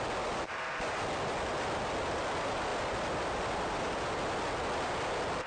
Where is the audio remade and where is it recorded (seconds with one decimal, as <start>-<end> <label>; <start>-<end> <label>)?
0.0-5.5 recorded